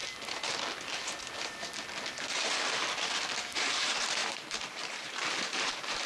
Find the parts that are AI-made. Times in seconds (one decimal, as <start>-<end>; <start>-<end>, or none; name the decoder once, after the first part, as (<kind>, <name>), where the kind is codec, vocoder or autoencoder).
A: 3.6-6.1 (vocoder, BigVGAN v2)